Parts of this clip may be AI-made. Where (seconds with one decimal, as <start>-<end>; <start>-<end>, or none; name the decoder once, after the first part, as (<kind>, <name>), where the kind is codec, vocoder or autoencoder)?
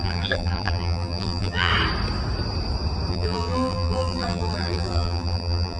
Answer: 0.0-1.7 (vocoder, BigVGAN v2); 3.1-5.8